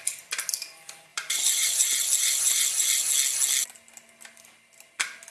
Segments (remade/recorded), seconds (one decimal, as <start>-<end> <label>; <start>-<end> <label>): 0.0-1.1 recorded; 1.1-3.1 remade; 3.1-5.3 recorded